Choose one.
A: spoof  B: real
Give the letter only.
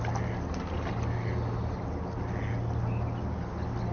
B